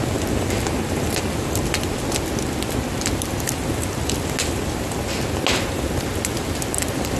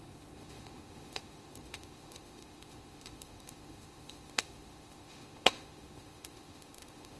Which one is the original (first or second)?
first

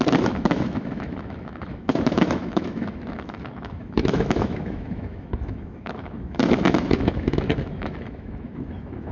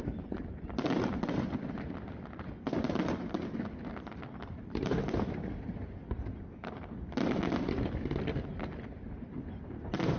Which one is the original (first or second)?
second